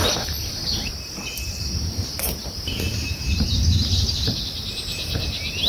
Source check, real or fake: fake